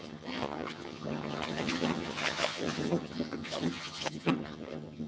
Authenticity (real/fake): fake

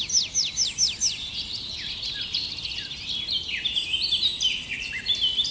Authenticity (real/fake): real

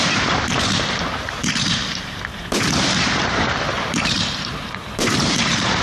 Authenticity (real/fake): fake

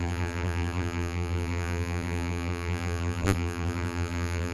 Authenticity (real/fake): fake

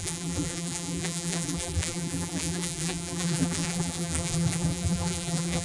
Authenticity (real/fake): fake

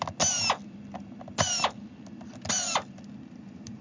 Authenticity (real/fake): real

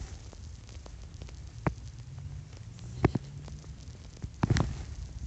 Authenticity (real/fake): real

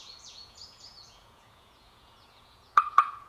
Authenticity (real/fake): fake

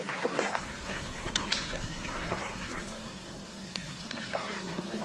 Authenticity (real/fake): fake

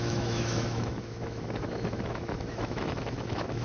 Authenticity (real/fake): fake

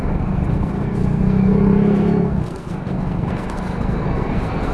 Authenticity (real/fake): fake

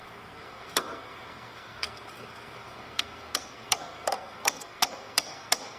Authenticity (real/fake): fake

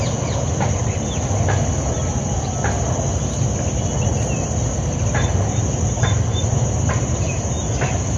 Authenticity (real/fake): real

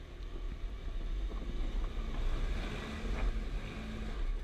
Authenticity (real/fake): real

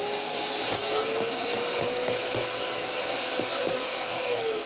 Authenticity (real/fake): fake